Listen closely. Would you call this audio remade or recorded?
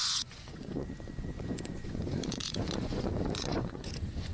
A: remade